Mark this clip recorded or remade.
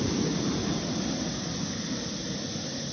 recorded